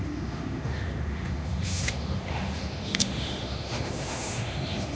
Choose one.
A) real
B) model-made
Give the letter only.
B